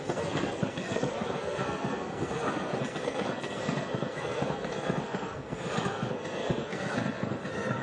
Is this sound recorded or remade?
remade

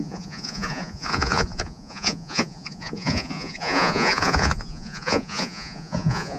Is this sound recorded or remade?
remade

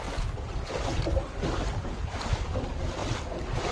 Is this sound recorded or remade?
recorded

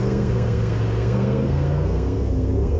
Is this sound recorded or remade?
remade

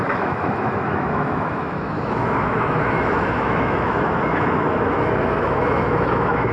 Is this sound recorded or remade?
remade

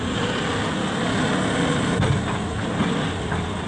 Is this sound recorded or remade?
recorded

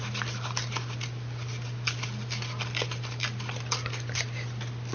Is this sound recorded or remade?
recorded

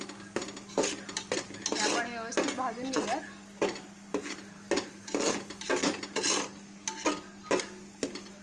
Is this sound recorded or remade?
recorded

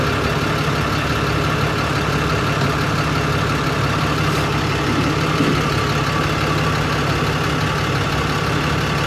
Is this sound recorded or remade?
recorded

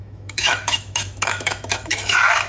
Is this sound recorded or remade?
remade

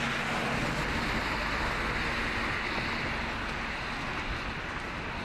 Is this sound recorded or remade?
recorded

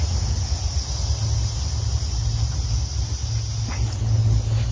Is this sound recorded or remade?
recorded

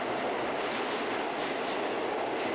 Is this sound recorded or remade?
recorded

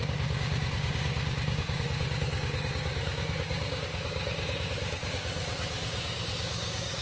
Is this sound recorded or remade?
remade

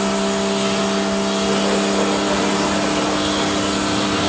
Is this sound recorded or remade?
recorded